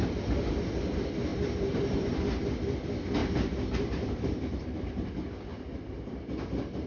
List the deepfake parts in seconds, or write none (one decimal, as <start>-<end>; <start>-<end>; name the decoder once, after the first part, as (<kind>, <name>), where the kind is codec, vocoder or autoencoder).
1.3-2.2 (vocoder, BigVGAN v2); 3.2-5.1